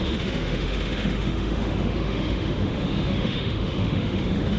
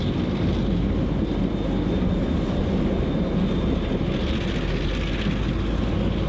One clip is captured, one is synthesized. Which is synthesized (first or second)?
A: first